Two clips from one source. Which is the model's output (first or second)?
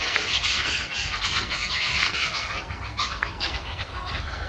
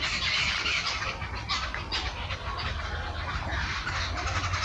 first